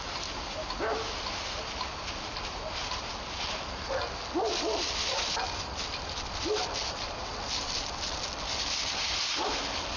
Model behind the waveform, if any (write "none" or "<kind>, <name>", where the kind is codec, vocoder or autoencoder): none